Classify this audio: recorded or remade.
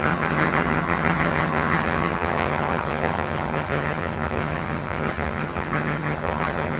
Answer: remade